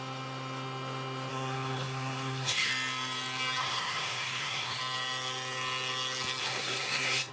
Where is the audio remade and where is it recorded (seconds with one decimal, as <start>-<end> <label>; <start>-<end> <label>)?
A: 0.0-1.3 recorded; 1.3-2.7 remade; 2.7-3.6 recorded; 3.6-4.8 remade; 4.8-6.4 recorded; 6.4-7.3 remade